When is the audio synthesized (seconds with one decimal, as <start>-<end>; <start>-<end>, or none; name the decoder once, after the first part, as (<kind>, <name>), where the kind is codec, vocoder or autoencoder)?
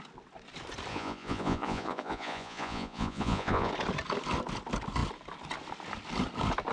0.9-3.7 (vocoder, Vocos)